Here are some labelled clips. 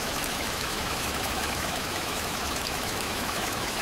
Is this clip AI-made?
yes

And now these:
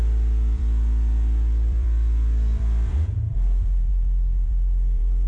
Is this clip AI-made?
yes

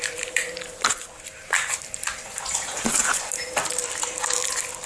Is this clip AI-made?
no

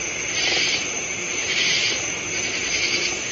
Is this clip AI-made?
yes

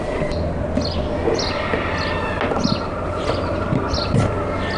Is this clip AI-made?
no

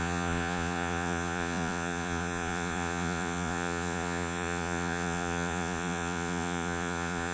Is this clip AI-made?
yes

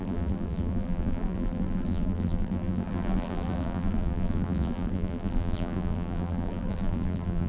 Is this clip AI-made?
yes